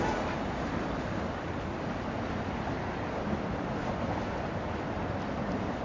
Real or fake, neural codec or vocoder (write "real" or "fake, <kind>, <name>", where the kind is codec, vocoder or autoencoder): real